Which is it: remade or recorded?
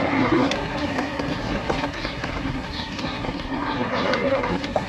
remade